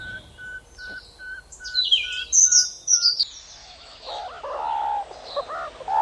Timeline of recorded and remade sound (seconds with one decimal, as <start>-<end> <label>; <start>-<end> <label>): 0.0-3.6 recorded; 3.6-4.2 remade; 4.2-6.0 recorded